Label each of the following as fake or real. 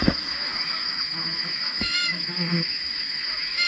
fake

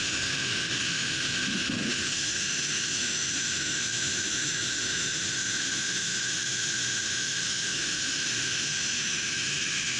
fake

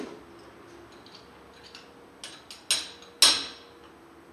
real